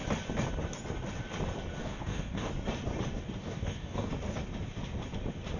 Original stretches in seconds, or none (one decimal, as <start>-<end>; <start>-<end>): 0.0-1.8; 2.5-3.4; 4.1-5.6